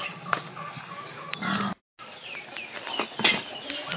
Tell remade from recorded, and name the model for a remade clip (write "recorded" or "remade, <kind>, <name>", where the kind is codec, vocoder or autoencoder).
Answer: recorded